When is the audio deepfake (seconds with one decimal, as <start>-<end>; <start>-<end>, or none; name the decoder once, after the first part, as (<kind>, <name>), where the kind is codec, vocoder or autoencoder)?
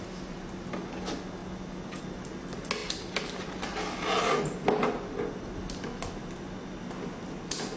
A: none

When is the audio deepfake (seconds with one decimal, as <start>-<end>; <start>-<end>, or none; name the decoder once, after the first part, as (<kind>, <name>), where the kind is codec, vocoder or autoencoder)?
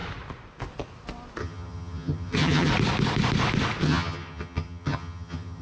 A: 1.4-2.7 (vocoder, HiFi-GAN); 3.8-5.6